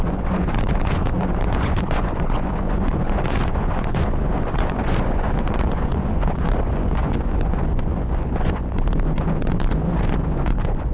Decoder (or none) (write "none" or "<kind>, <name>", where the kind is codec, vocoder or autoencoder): vocoder, Vocos